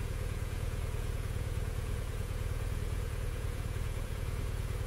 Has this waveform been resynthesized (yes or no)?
yes